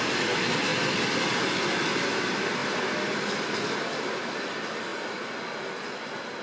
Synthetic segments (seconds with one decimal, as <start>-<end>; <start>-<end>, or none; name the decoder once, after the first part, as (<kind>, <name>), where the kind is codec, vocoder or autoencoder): none